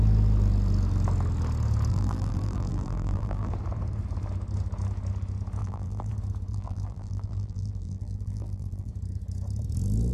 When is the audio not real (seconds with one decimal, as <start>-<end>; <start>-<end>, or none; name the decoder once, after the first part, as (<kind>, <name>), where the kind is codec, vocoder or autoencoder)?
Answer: 1.9-3.5 (vocoder, BigVGAN v2); 5.6-6.1; 6.5-8.9